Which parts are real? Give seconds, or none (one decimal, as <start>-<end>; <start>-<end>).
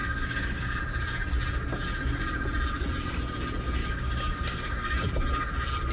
0.8-3.8; 5.1-5.9